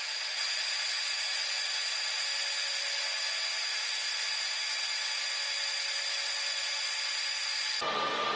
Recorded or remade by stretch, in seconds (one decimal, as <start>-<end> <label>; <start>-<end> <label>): 0.0-8.4 recorded